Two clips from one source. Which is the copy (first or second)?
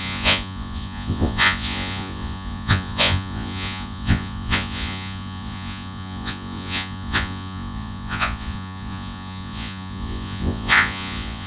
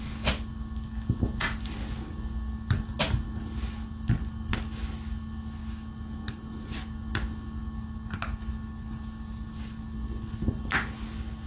first